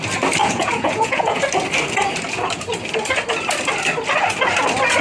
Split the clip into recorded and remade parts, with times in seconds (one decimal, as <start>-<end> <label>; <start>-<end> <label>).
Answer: 0.0-0.4 recorded; 0.4-1.4 remade; 1.4-5.0 recorded